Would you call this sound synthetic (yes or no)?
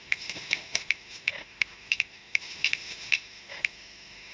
yes